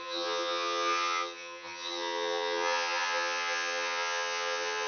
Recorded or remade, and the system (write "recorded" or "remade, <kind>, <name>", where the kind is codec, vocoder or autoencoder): remade, vocoder, HiFi-GAN